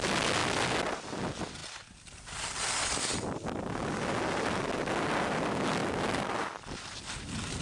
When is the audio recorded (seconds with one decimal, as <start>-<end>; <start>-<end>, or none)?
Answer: 0.0-5.8; 6.8-7.6